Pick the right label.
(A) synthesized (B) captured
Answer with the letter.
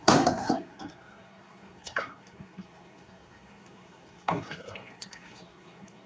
A